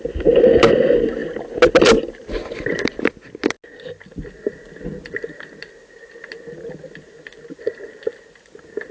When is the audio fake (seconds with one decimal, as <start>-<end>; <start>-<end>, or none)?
none